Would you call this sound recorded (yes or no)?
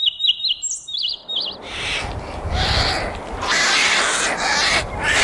yes